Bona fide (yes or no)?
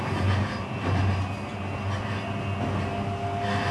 yes